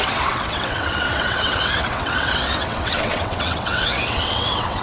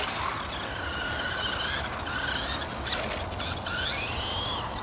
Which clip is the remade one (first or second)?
first